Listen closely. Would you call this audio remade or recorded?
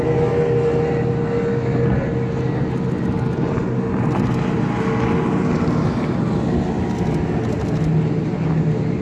recorded